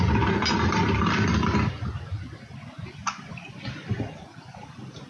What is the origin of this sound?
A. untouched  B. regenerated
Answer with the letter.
A